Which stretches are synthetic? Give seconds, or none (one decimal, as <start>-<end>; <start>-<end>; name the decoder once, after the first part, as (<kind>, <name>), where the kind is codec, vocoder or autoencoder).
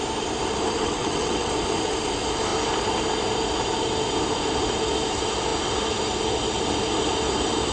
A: 0.8-1.5 (vocoder, WaveNeXt)